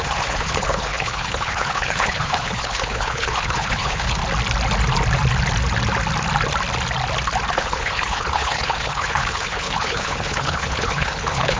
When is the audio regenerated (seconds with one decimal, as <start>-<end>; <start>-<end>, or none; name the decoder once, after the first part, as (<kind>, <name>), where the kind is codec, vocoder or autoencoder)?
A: 0.0-4.2 (codec, HILCodec); 7.5-11.6